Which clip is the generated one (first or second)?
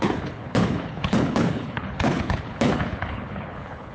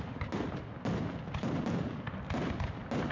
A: first